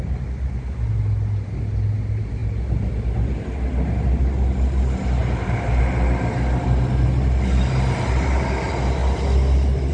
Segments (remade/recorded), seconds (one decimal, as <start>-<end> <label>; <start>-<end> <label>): 0.0-5.2 recorded; 5.2-5.8 remade; 5.8-9.9 recorded